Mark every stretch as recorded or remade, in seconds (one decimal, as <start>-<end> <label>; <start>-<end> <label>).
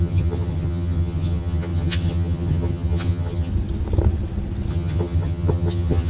0.0-3.5 remade; 3.5-4.7 recorded; 4.7-6.1 remade